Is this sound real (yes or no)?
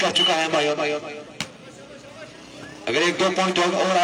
yes